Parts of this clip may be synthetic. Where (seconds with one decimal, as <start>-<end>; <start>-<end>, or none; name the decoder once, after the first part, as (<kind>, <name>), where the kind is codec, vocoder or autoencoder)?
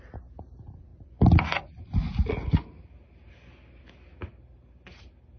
none